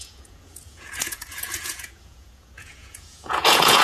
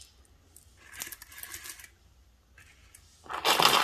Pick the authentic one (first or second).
second